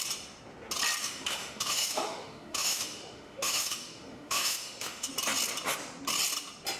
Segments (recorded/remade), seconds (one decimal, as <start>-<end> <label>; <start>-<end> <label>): 0.0-1.0 recorded; 1.0-5.1 remade; 5.1-6.8 recorded